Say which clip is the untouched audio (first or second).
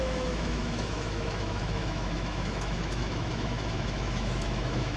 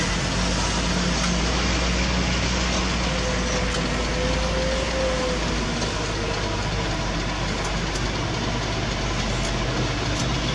second